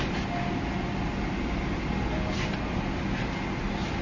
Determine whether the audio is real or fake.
real